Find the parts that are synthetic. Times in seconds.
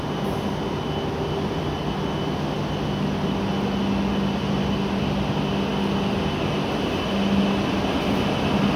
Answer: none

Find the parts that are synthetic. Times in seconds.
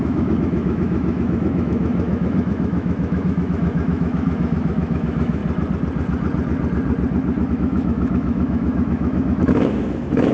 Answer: 0.0-5.4 (autoencoder, DAC-VAE); 7.5-10.3